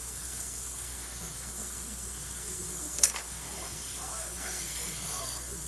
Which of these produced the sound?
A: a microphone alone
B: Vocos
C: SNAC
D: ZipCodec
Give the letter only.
C